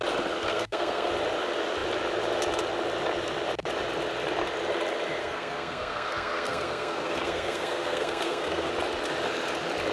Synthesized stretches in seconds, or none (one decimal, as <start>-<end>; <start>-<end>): 0.5-1.1; 5.2-8.7